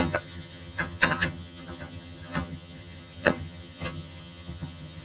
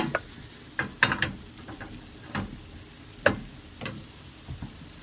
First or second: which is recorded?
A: second